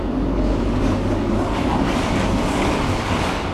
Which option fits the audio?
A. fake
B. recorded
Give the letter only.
A